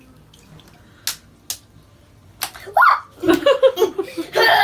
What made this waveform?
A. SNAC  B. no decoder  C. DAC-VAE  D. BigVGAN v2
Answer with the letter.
B